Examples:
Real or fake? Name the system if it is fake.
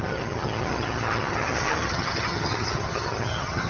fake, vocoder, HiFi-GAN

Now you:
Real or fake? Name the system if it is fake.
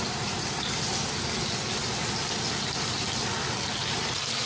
real